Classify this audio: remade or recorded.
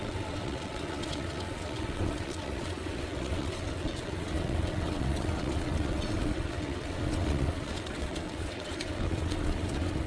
remade